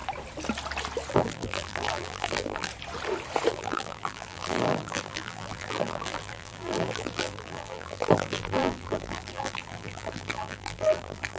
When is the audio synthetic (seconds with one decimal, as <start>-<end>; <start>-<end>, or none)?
1.1-2.7; 3.5-11.4